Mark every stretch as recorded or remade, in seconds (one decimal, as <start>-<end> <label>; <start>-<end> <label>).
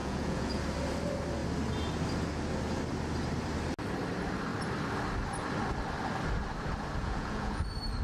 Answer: 0.0-0.6 remade; 0.6-7.0 recorded; 7.0-7.6 remade; 7.6-8.0 recorded